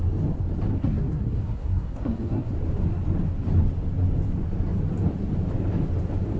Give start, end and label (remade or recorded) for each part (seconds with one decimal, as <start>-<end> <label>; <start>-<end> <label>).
0.0-0.8 recorded; 0.8-2.5 remade; 2.5-6.4 recorded